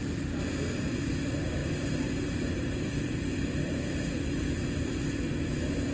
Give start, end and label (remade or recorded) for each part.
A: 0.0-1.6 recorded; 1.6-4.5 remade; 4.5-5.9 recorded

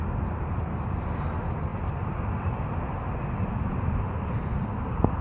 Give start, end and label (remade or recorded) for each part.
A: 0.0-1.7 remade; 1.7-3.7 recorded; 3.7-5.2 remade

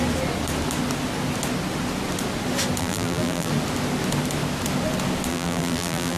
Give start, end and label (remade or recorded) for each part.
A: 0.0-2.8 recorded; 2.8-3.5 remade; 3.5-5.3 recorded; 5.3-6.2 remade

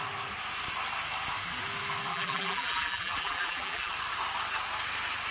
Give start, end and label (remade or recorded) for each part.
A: 0.0-2.1 recorded; 2.1-3.9 remade; 3.9-5.3 recorded

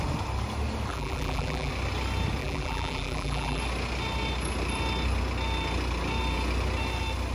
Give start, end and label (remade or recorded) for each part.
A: 0.0-0.9 recorded; 0.9-1.7 remade; 1.7-2.4 recorded; 2.4-3.6 remade; 3.6-7.3 recorded

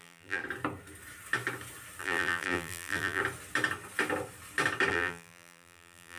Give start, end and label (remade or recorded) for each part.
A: 0.0-0.4 remade; 0.4-2.0 recorded; 2.0-3.2 remade; 3.2-4.9 recorded; 4.9-6.2 remade